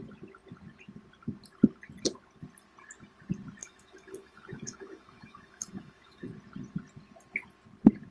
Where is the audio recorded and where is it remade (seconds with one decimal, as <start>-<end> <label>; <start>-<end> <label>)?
0.0-3.6 recorded; 3.6-6.3 remade; 6.3-8.1 recorded